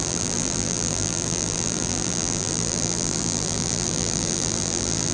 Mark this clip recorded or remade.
remade